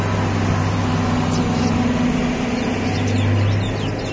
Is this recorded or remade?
recorded